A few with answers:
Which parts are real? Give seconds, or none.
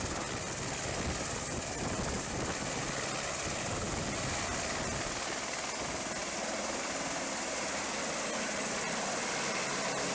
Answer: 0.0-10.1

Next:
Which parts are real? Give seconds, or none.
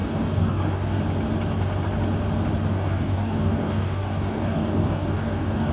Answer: 1.0-2.7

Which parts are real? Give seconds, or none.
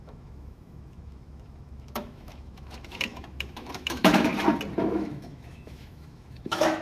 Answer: 4.3-4.8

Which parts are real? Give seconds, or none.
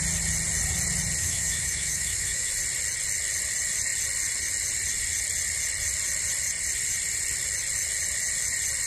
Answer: 0.0-1.2; 2.5-8.9